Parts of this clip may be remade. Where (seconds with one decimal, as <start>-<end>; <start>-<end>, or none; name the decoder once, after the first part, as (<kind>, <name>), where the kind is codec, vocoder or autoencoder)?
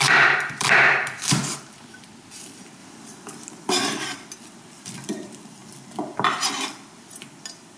0.0-5.6 (vocoder, BigVGAN v2); 6.7-7.8